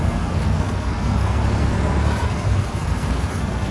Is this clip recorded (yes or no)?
no